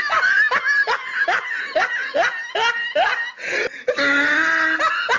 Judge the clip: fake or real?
real